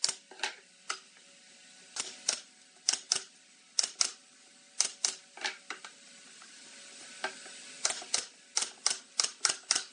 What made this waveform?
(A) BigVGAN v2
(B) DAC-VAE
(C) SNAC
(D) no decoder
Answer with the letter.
D